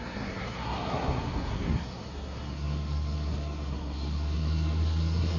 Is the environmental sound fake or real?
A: fake